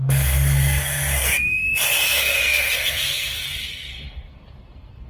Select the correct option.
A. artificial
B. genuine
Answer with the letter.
A